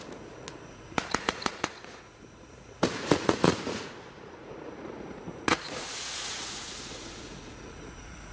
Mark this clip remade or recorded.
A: remade